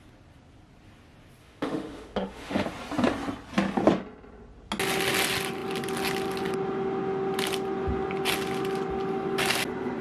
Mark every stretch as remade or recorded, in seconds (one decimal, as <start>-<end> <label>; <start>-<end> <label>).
0.0-1.4 recorded; 1.4-2.7 remade; 2.7-10.0 recorded